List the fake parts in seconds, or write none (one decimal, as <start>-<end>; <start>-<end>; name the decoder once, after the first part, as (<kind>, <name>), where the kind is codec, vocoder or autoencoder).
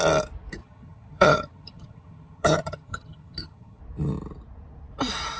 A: 0.6-3.8 (vocoder, HiFi-GAN)